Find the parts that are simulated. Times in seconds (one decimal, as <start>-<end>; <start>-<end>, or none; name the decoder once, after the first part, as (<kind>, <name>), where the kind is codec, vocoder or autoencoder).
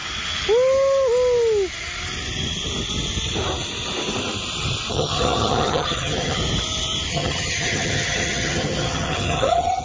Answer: 4.9-6.4 (vocoder, HiFi-GAN); 7.1-9.8